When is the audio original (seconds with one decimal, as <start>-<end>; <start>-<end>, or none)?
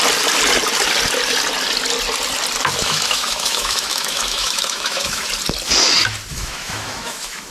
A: 0.0-2.8; 5.3-6.3